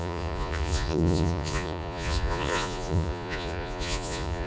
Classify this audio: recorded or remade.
remade